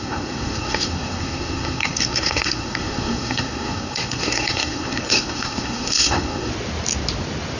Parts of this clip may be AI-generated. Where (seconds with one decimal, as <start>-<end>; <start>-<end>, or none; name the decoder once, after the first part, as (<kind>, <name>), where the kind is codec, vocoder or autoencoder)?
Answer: 0.0-6.5 (codec, SNAC)